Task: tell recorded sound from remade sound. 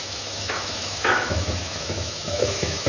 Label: remade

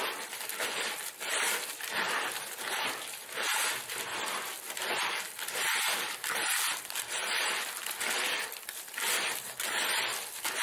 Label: remade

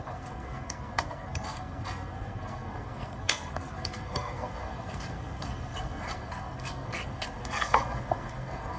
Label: remade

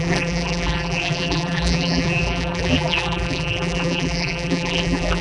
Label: remade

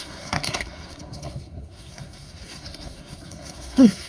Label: remade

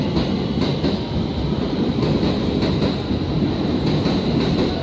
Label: recorded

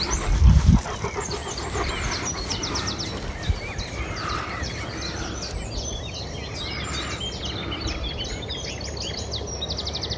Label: recorded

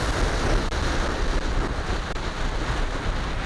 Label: recorded